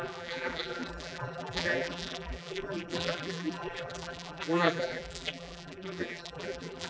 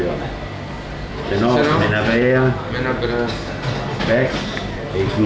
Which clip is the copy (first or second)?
first